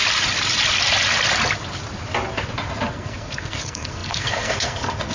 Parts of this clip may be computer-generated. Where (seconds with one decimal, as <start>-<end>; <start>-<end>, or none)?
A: 2.9-5.1